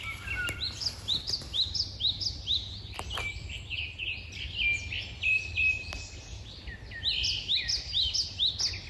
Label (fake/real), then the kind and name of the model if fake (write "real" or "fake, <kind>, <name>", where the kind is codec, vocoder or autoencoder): real